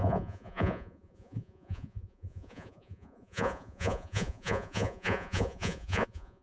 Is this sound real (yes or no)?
no